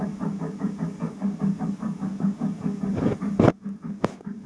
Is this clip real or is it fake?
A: fake